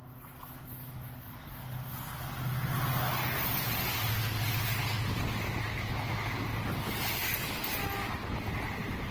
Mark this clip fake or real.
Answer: real